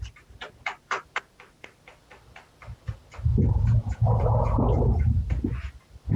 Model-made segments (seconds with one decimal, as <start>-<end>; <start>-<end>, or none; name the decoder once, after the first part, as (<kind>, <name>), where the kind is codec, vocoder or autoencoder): 3.3-4.6 (vocoder, Vocos)